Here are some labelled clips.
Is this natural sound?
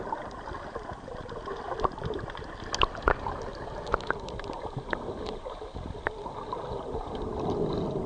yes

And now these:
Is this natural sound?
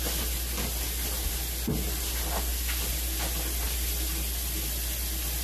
yes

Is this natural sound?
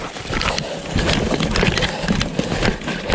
yes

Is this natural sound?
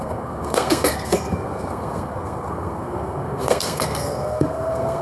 no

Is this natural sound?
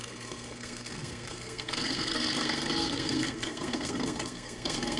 no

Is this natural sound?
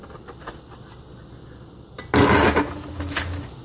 yes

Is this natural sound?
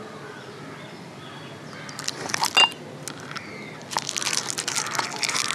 yes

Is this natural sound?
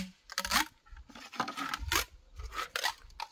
yes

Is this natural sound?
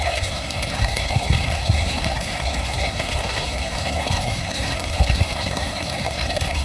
no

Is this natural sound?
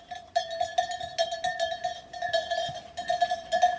yes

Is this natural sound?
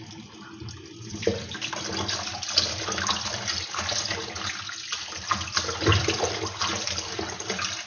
yes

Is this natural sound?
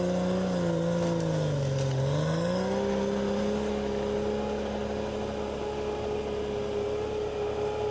yes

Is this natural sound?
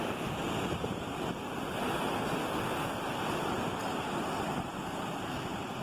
yes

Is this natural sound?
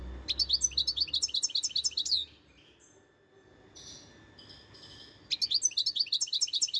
yes